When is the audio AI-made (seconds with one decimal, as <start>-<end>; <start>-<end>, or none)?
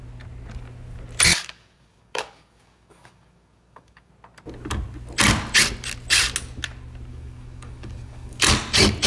1.3-4.1; 7.1-8.4